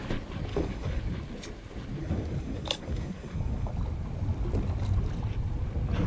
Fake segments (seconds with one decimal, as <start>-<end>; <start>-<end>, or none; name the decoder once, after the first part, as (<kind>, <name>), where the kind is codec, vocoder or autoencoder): 0.5-1.0 (codec, DAC); 2.0-3.7

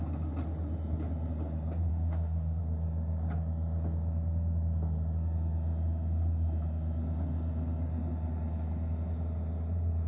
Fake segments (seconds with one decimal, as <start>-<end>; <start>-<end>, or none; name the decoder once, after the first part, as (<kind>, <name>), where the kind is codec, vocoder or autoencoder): 1.9-2.6 (autoencoder, DAC-VAE)